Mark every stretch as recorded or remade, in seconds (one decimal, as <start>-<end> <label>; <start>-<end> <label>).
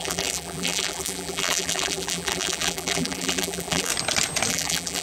0.0-3.9 remade; 3.9-4.5 recorded; 4.5-5.0 remade